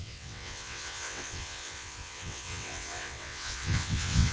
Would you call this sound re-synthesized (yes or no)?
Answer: yes